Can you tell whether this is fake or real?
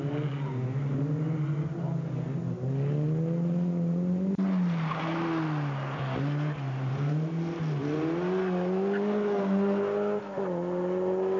real